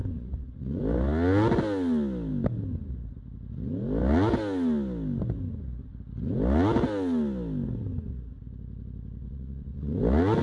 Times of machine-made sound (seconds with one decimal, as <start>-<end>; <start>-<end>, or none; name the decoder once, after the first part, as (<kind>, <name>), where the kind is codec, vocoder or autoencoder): 0.0-0.8 (vocoder, Vocos); 9.2-10.0